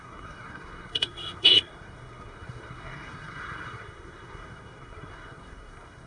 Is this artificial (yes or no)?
yes